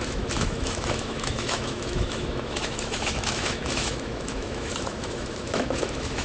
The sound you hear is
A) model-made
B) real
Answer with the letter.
A